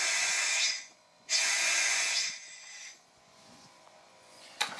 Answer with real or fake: fake